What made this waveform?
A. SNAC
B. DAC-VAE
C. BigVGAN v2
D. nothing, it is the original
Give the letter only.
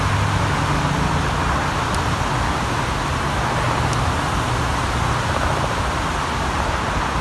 D